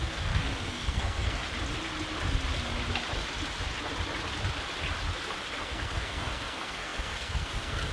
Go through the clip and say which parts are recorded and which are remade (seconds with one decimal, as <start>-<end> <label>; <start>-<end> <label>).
0.0-1.4 remade; 1.4-5.6 recorded; 5.6-7.9 remade